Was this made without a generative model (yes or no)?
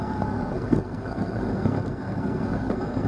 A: no